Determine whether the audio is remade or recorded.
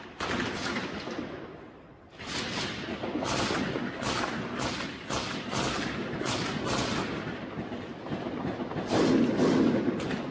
recorded